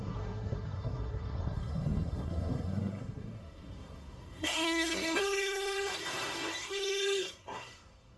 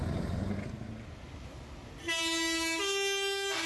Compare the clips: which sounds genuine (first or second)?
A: second